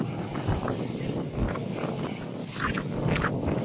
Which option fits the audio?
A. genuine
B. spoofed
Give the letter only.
A